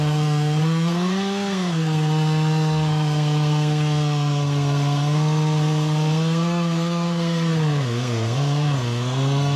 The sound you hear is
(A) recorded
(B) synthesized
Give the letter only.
B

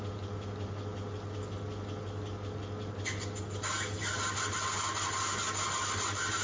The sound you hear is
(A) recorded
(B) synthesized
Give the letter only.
A